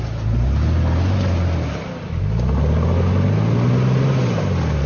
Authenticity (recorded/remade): recorded